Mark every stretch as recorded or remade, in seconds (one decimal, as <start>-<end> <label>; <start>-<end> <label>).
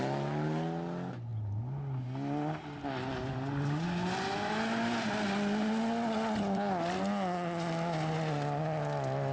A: 0.0-9.3 recorded